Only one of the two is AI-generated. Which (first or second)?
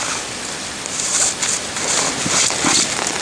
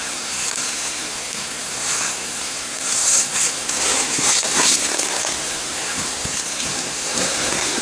second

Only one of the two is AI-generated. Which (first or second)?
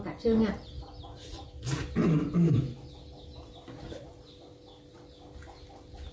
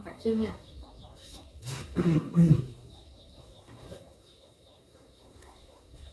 second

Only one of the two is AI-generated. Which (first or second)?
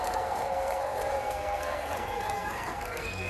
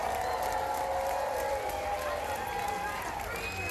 first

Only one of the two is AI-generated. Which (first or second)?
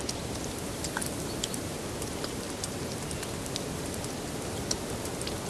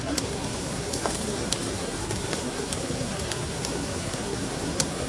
second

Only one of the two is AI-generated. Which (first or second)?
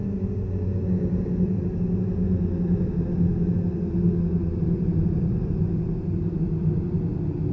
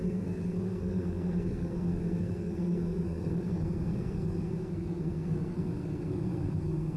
second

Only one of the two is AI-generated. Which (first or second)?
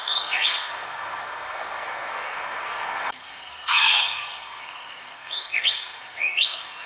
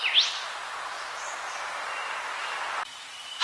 first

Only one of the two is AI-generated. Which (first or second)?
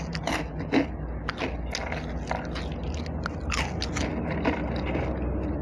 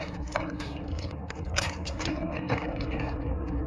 second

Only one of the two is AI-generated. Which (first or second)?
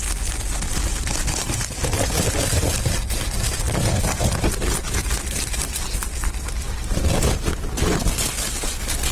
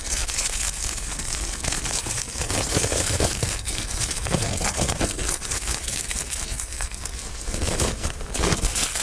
second